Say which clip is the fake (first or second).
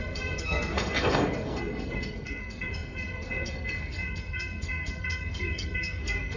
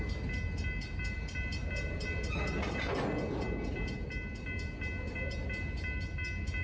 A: first